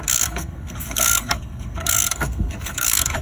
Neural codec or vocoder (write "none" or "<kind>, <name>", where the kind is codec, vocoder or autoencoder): codec, SNAC